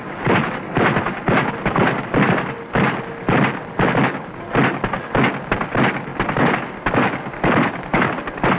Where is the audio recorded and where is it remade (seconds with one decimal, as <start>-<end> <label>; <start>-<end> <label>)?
0.0-8.6 recorded